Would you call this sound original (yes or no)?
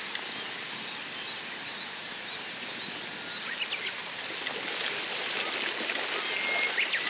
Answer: yes